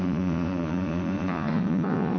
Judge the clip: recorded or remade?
remade